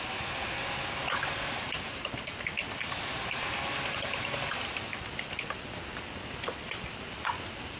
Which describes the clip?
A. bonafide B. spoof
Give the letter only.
A